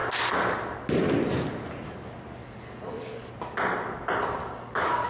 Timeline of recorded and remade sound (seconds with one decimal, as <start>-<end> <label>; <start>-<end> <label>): 0.0-2.4 recorded; 2.4-3.3 remade; 3.3-4.4 recorded; 4.4-5.1 remade